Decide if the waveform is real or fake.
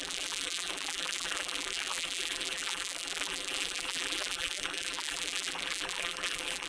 fake